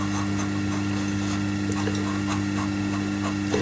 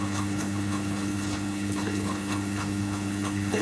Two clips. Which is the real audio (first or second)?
first